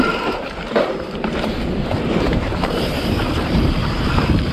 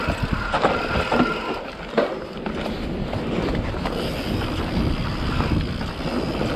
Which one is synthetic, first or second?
first